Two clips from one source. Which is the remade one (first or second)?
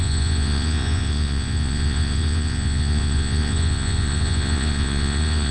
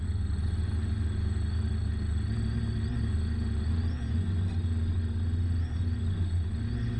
first